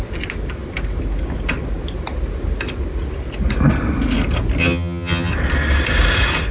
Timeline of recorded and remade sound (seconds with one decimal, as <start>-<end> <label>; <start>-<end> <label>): 0.0-4.6 recorded; 4.6-5.3 remade; 5.3-6.5 recorded